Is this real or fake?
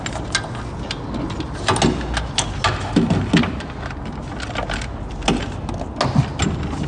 real